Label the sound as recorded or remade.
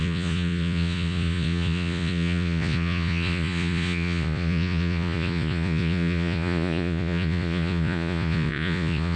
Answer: remade